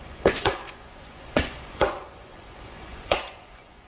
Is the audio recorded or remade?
remade